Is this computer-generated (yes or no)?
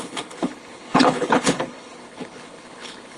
yes